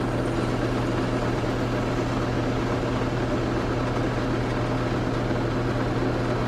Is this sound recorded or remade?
recorded